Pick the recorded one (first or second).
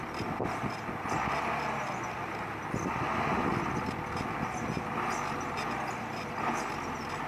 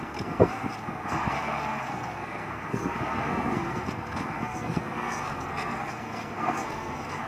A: first